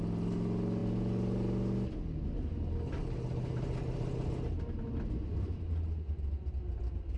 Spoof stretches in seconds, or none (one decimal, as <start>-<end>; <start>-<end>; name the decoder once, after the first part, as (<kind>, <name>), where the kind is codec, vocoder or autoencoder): none